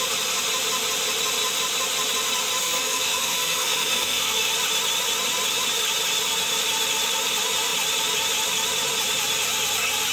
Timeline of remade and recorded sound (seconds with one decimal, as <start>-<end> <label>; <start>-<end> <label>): 0.0-2.6 recorded; 2.6-4.5 remade; 4.5-10.1 recorded